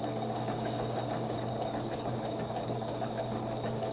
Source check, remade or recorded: remade